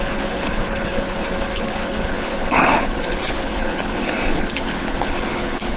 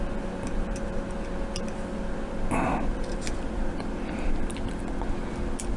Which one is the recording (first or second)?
second